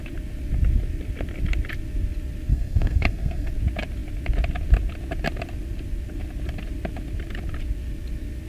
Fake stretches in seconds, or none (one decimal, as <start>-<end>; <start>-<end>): 2.5-3.5